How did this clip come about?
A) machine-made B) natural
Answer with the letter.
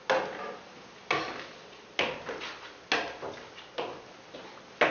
B